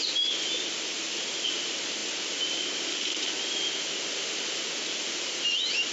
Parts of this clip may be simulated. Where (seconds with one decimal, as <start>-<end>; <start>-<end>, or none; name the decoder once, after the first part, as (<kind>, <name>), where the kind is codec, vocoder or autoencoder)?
none